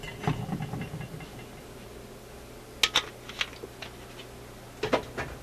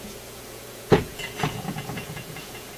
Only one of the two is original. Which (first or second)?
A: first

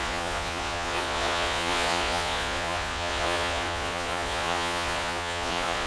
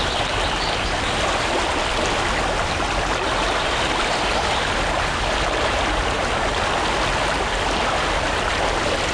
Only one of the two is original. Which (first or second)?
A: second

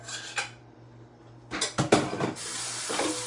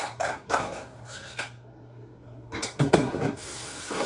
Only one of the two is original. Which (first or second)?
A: first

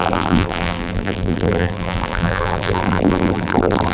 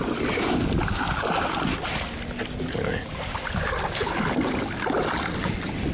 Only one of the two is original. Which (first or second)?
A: second